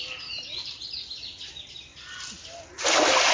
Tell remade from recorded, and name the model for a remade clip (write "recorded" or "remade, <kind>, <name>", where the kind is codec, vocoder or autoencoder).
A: recorded